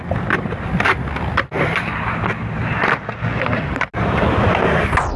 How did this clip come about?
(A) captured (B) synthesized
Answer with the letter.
A